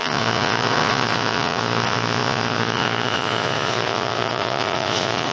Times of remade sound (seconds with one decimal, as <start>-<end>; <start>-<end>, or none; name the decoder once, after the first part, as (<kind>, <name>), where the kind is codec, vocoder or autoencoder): 0.0-5.3 (vocoder, Vocos)